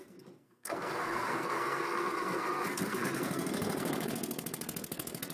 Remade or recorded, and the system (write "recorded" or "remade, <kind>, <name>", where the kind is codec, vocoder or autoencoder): remade, codec, SNAC